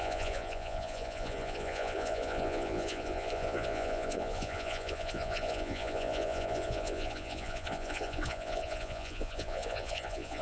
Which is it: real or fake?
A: fake